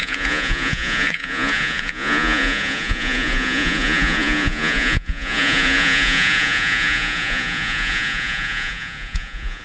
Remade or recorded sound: remade